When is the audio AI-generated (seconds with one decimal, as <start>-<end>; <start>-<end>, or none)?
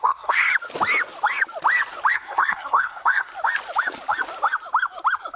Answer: 0.0-0.5; 2.1-3.3